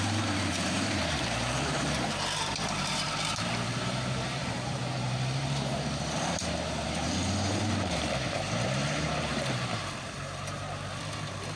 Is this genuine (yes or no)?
no